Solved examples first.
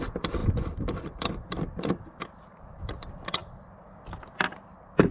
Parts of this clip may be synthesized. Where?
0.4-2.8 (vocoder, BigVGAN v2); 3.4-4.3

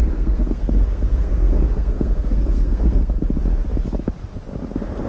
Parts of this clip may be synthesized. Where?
0.0-3.1 (codec, SNAC)